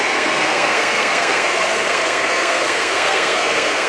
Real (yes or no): no